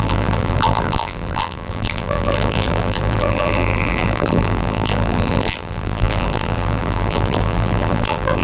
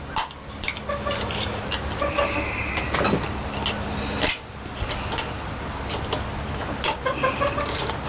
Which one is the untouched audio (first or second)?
second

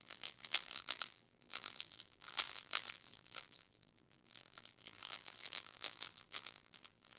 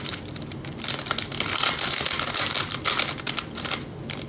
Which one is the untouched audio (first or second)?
second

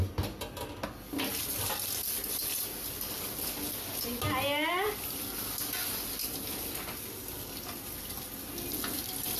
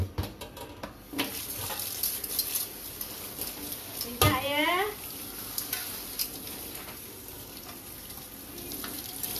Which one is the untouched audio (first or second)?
first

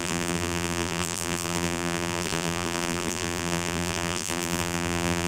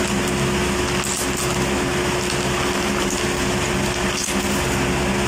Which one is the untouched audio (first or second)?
second